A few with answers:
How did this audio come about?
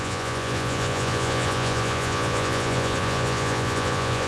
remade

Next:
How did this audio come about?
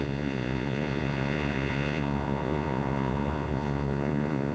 remade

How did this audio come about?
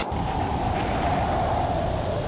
recorded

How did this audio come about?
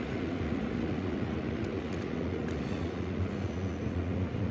remade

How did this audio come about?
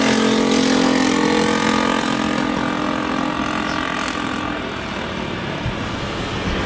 recorded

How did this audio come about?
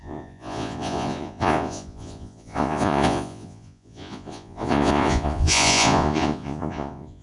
remade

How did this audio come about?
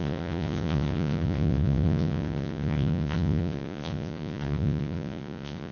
remade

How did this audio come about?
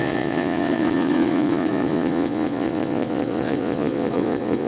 remade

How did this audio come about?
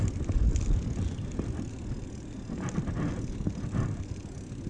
recorded